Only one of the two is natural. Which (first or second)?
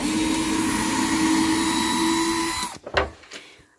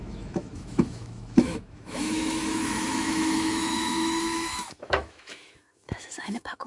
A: first